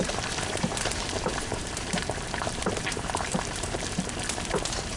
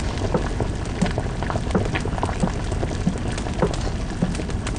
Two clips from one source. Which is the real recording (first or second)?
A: second